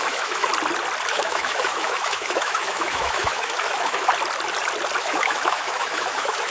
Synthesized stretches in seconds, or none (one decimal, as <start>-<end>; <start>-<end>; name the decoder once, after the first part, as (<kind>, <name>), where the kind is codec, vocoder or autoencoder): 0.0-0.5 (autoencoder, DAC-VAE); 1.1-4.1; 5.0-6.5